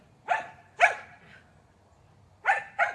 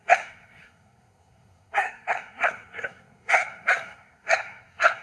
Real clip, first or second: first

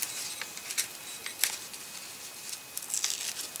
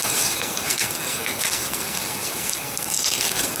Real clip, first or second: first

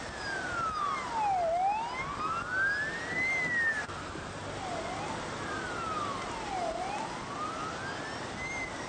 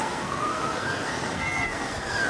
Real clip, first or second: first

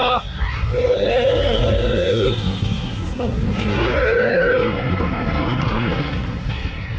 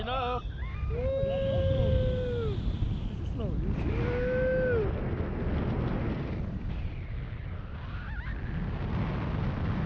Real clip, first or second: second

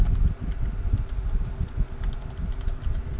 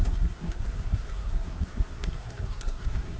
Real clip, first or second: first